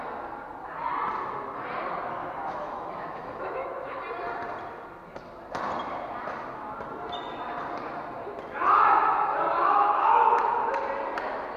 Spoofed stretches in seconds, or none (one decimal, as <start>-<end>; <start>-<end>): 2.2-4.0; 9.6-10.4